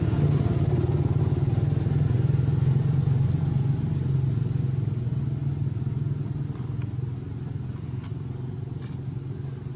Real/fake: real